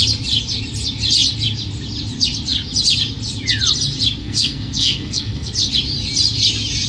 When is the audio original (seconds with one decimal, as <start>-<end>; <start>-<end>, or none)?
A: 0.0-4.2; 5.5-6.9

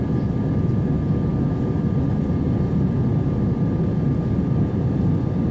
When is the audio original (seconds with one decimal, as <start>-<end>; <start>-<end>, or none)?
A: 0.0-5.5

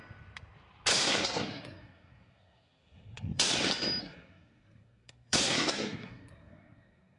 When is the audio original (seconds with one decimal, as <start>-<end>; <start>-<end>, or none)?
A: 0.0-0.9; 3.5-4.0

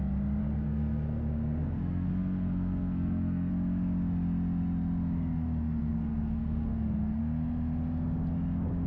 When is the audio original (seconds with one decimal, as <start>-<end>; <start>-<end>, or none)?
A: 0.0-0.4; 3.5-5.8; 7.2-8.9

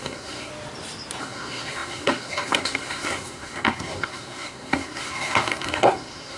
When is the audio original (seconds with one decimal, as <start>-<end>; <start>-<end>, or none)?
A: 0.5-1.2

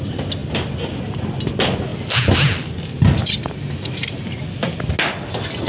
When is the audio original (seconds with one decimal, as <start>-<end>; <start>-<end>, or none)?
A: 0.0-5.7

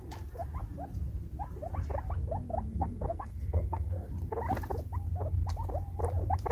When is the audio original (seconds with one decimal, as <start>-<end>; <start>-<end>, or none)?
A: 0.0-2.7; 4.1-6.5